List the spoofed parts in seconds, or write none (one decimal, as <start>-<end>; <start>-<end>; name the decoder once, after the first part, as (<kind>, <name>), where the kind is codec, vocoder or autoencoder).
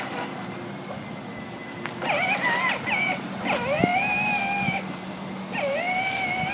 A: none